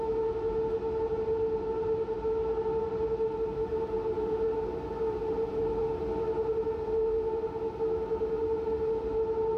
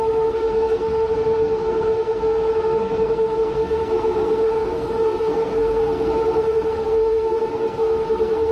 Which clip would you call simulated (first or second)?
second